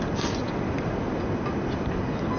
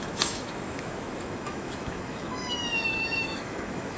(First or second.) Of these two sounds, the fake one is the second